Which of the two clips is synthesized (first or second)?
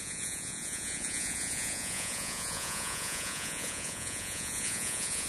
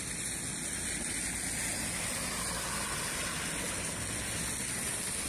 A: first